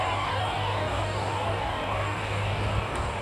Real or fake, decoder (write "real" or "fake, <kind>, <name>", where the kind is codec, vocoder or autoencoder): fake, codec, DAC